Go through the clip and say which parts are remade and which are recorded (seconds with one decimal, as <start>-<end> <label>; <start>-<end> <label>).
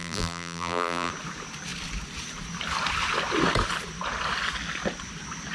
0.0-1.1 remade; 1.1-5.5 recorded